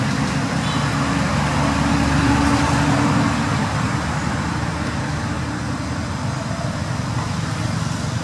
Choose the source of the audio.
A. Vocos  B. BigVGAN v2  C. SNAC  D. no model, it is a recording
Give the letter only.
B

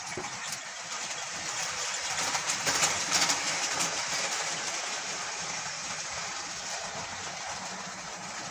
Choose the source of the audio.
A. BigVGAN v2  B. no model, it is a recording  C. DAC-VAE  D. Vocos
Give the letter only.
A